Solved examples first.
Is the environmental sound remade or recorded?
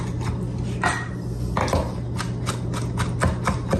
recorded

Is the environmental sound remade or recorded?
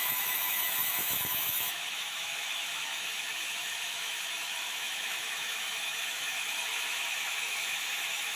remade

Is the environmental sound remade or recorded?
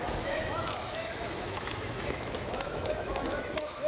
remade